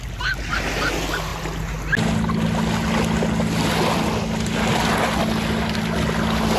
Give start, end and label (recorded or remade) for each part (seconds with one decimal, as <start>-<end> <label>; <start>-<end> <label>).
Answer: 0.0-6.6 recorded